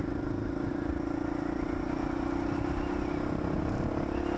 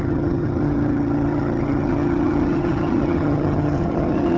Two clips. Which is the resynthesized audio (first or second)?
second